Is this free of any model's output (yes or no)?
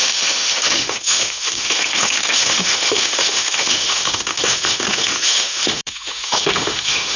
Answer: no